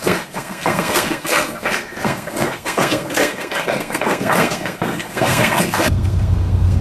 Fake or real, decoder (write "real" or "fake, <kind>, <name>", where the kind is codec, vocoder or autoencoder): fake, codec, SNAC